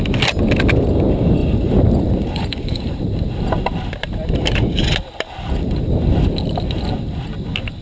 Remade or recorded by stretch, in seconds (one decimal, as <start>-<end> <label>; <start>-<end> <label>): 0.0-1.4 recorded; 1.4-3.0 remade; 3.0-7.8 recorded